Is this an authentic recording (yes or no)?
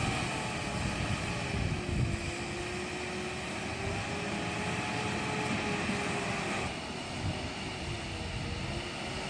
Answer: yes